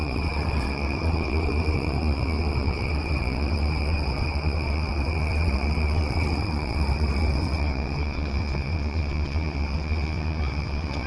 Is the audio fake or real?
fake